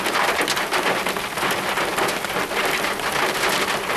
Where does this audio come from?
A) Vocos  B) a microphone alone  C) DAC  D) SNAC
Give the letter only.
B